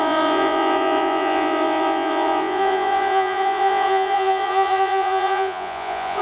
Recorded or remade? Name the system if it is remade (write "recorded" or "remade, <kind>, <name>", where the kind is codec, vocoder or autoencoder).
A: remade, vocoder, Vocos